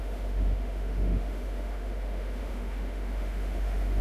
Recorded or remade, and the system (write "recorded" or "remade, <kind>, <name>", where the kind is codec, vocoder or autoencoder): remade, autoencoder, DAC-VAE